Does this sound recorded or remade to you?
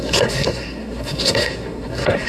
remade